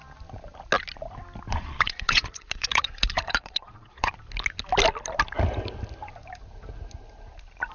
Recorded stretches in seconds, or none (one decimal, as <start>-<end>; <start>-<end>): 0.0-1.5; 4.1-7.7